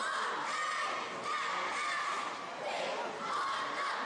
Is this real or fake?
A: real